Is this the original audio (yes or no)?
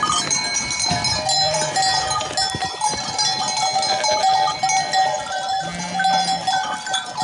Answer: yes